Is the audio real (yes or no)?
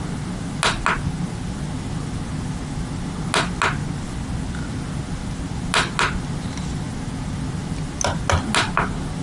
yes